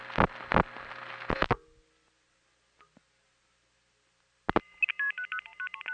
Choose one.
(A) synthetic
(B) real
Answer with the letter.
B